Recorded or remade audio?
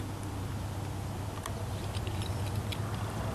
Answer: recorded